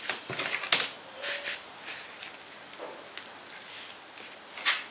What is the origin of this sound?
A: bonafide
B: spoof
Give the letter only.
A